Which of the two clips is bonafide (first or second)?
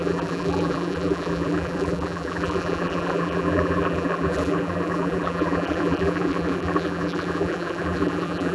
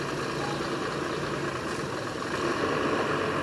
second